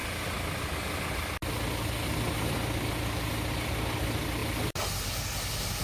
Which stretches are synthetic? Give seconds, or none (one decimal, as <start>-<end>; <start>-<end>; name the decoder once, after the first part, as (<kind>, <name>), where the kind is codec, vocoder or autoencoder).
none